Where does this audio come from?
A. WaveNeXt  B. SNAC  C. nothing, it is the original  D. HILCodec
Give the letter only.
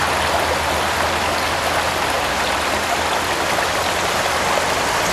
C